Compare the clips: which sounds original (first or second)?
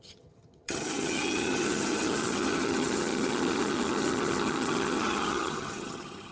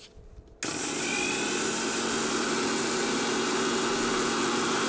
second